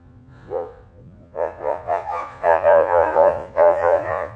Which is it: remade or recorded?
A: remade